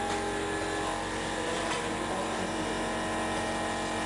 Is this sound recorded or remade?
recorded